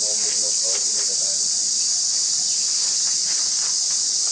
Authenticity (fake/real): real